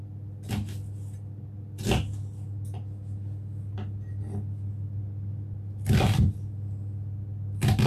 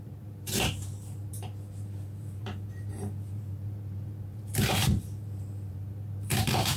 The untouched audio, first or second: first